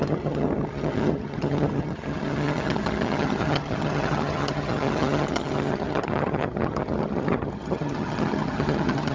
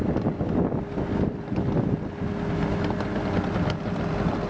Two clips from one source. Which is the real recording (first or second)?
second